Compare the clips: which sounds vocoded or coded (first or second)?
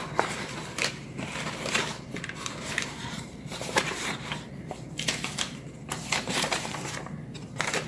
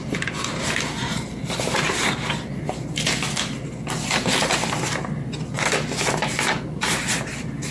first